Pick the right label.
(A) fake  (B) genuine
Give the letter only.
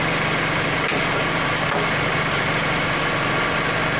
B